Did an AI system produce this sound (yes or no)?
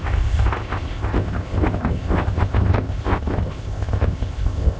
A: yes